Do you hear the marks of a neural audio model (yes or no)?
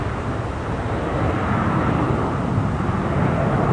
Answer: no